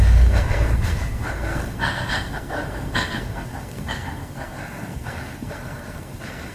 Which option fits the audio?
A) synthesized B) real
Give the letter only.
A